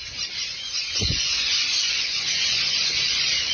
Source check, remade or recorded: remade